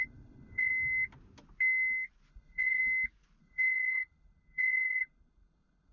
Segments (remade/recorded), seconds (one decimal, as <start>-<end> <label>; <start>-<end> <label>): 0.0-0.7 remade; 0.7-2.3 recorded; 2.3-2.8 remade; 2.8-3.4 recorded; 3.4-5.9 remade